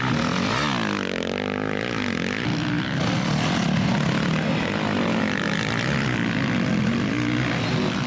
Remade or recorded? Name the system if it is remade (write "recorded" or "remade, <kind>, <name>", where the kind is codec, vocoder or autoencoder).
recorded